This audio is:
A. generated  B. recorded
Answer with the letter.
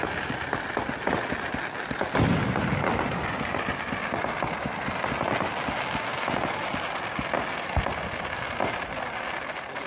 B